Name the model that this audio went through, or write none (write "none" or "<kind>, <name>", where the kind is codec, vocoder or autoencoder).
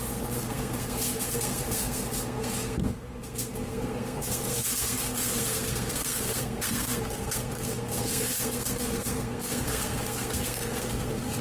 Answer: codec, SNAC